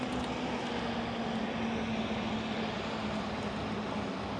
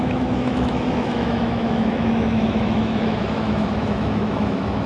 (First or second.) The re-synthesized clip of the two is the second